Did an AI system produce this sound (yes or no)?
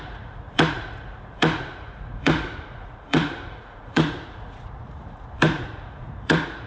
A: yes